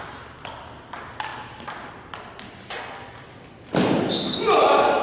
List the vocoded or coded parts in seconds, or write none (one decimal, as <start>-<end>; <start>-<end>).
1.3-3.6